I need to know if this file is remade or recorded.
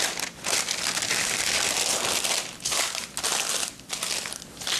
recorded